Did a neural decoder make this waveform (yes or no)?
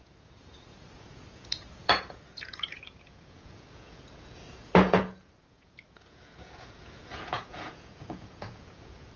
yes